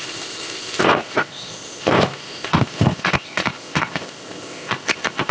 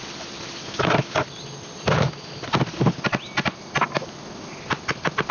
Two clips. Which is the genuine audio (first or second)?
second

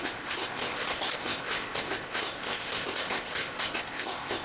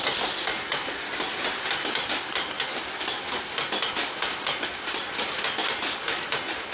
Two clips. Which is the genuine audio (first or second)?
second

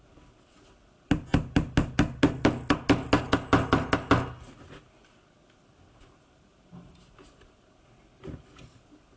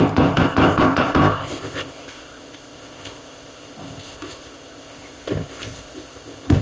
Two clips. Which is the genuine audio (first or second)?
first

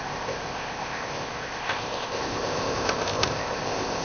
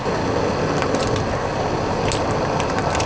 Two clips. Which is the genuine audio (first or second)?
second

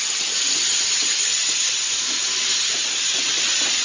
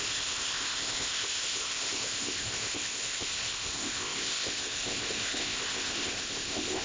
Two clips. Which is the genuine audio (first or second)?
first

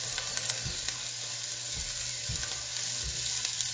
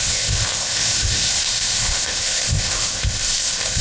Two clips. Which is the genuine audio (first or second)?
first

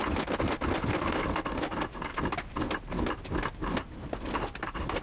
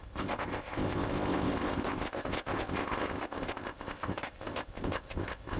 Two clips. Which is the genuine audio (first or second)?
first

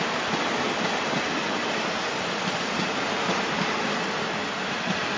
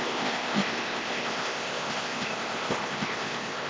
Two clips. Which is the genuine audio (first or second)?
first